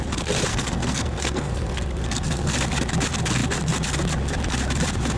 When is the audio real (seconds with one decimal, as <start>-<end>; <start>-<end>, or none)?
0.0-0.5; 2.5-5.2